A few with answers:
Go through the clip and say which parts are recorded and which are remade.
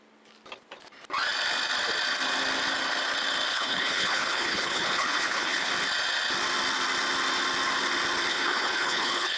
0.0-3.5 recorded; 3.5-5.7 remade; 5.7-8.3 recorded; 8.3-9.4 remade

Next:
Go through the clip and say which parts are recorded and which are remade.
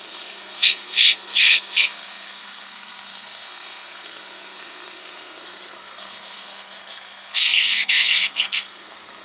0.0-9.2 remade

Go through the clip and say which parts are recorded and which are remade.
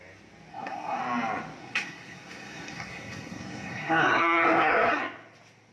0.0-0.5 recorded; 0.5-1.0 remade; 1.0-1.6 recorded; 1.6-5.0 remade; 5.0-5.7 recorded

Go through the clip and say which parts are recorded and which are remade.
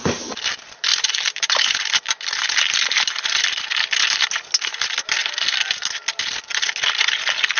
0.0-0.9 recorded; 0.9-1.9 remade; 1.9-7.6 recorded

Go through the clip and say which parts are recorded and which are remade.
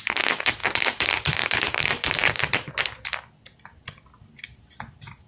0.0-0.6 recorded; 0.6-2.7 remade; 2.7-5.3 recorded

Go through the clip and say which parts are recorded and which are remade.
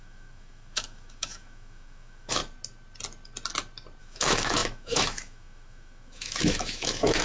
0.0-2.4 remade; 2.4-4.0 recorded; 4.0-7.2 remade